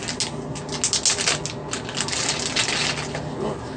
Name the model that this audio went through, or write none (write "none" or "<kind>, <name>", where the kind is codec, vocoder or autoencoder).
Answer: none